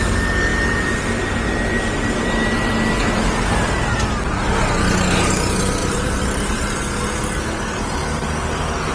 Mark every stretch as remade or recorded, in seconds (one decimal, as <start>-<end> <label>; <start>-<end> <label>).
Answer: 0.0-5.8 recorded; 5.8-7.0 remade; 7.0-8.9 recorded